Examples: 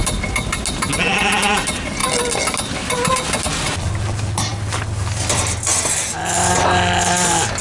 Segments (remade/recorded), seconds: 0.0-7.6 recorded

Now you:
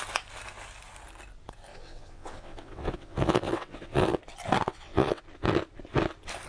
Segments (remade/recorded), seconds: 0.0-1.7 recorded; 1.7-4.2 remade; 4.2-4.7 recorded; 4.7-5.2 remade; 5.2-6.5 recorded

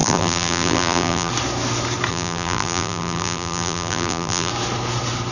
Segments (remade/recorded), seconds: 0.0-1.3 remade; 1.3-2.1 recorded; 2.1-4.5 remade; 4.5-5.3 recorded